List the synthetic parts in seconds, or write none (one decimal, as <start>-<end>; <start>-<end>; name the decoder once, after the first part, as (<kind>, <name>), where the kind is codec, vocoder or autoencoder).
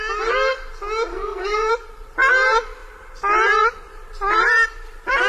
1.1-1.7 (codec, SNAC)